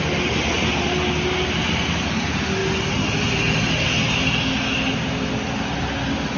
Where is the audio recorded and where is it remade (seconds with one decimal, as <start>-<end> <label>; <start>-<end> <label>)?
0.0-6.4 recorded